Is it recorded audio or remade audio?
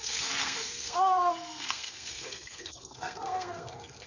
remade